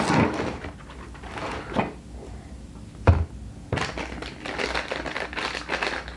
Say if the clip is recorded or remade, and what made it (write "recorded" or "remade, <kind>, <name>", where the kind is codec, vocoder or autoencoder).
recorded